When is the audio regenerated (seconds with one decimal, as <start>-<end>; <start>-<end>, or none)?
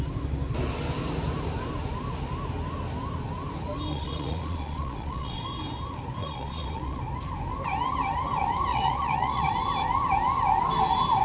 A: 3.9-5.4; 6.2-7.0; 8.7-9.5